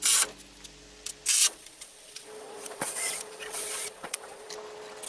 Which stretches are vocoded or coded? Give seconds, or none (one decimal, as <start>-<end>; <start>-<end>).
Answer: 1.4-4.5